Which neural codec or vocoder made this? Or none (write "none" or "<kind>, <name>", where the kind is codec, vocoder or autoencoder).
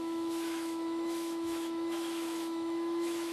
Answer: autoencoder, DAC-VAE